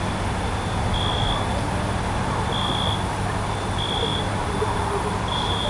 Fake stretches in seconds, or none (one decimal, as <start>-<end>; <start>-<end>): 4.1-5.7